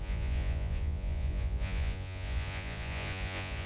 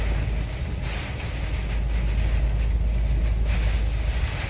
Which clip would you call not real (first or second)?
first